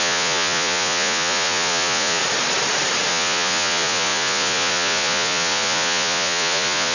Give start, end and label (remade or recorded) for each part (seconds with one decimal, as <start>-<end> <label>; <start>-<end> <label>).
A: 0.0-2.2 remade; 2.2-3.1 recorded; 3.1-6.9 remade

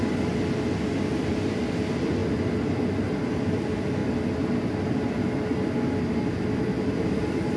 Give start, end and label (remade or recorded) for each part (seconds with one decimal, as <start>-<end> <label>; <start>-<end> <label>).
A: 0.0-7.6 recorded

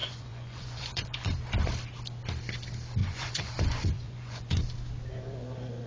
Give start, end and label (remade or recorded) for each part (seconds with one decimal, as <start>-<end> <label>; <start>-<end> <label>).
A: 0.0-1.4 remade; 1.4-3.0 recorded; 3.0-4.6 remade; 4.6-5.9 recorded

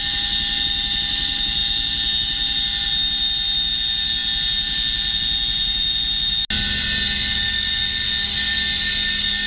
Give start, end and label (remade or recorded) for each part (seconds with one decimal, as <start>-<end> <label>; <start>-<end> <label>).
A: 0.0-9.5 recorded

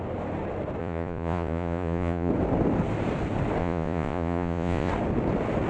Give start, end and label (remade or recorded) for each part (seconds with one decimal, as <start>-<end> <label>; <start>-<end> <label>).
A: 0.0-0.8 recorded; 0.8-2.3 remade; 2.3-3.6 recorded; 3.6-4.9 remade; 4.9-5.7 recorded

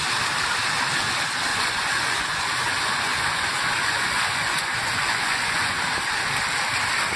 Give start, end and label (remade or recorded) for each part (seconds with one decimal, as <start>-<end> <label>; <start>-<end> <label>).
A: 0.0-1.5 recorded; 1.5-5.8 remade; 5.8-7.2 recorded